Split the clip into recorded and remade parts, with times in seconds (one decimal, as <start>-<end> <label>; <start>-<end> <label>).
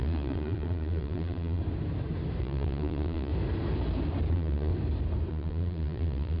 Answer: 0.0-1.6 remade; 1.6-2.4 recorded; 2.4-3.3 remade; 3.3-4.3 recorded; 4.3-4.7 remade; 4.7-5.3 recorded; 5.3-6.4 remade